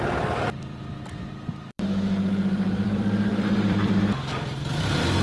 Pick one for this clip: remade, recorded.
remade